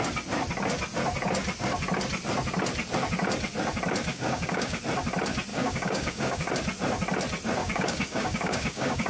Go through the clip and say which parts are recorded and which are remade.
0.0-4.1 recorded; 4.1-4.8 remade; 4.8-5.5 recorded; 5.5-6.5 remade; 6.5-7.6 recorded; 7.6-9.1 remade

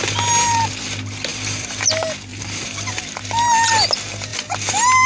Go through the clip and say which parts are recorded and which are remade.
0.0-1.3 recorded; 1.3-1.8 remade; 1.8-2.3 recorded; 2.3-2.9 remade; 2.9-5.1 recorded

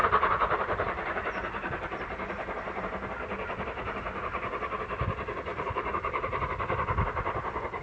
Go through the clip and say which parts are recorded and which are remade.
0.0-2.8 remade; 2.8-5.5 recorded; 5.5-6.4 remade; 6.4-7.8 recorded

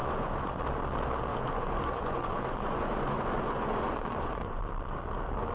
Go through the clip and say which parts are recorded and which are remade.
0.0-0.6 remade; 0.6-1.3 recorded; 1.3-4.6 remade; 4.6-5.5 recorded

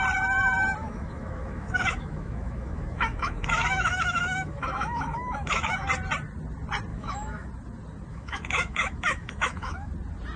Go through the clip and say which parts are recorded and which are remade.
0.0-0.8 recorded; 0.8-5.9 remade; 5.9-6.9 recorded; 6.9-7.5 remade; 7.5-8.1 recorded; 8.1-9.9 remade; 9.9-10.4 recorded

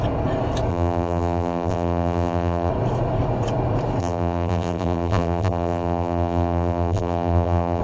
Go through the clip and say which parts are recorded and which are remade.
0.0-0.7 recorded; 0.7-2.7 remade; 2.7-4.0 recorded; 4.0-7.8 remade

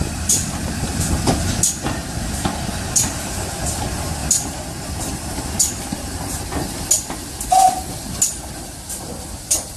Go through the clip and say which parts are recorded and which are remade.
0.0-9.8 recorded